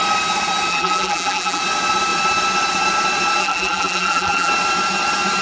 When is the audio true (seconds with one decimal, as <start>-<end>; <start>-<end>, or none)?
0.0-0.7; 1.6-3.4; 4.5-5.4